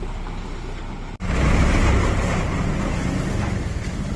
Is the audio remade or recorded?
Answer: recorded